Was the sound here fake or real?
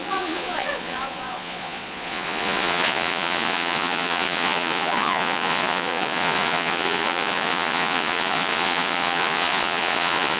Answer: fake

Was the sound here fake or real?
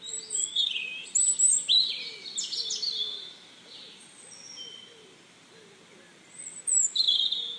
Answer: real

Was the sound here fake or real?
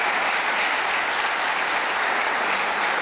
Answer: real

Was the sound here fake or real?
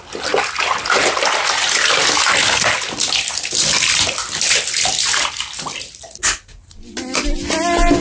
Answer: real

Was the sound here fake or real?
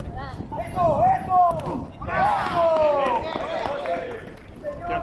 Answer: real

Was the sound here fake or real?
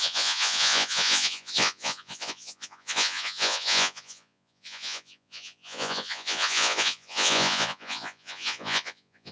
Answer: fake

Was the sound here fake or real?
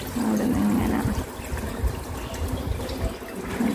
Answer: real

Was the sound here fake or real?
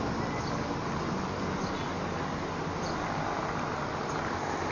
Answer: real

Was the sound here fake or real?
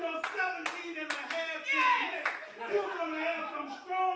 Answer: real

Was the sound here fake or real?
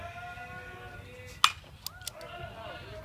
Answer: real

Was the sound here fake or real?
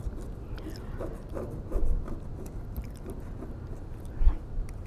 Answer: real